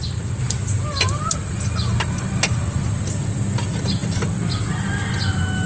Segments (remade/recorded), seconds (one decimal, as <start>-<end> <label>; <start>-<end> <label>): 0.0-5.7 recorded